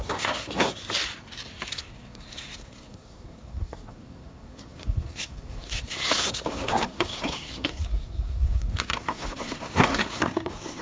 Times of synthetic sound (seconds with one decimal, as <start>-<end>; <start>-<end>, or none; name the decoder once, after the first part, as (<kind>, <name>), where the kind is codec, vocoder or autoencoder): 0.0-0.8 (codec, SNAC); 1.7-10.8